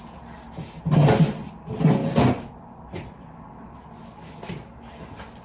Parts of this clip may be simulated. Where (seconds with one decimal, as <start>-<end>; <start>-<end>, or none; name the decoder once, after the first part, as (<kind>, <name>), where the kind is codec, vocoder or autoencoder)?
none